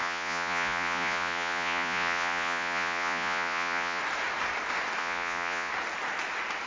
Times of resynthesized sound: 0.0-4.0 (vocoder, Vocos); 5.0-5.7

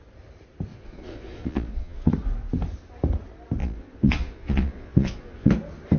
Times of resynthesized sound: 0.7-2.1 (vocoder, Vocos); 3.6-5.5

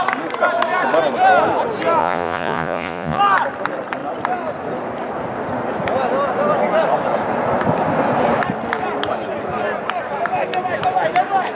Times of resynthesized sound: 2.0-3.2 (vocoder, Vocos)